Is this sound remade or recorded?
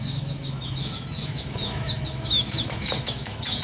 remade